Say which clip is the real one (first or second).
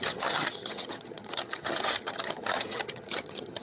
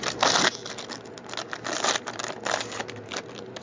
second